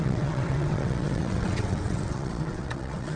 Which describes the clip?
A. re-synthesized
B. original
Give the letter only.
A